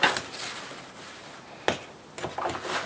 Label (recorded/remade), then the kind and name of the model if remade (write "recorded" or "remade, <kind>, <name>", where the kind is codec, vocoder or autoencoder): recorded